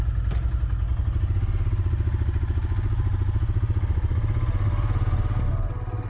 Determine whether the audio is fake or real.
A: real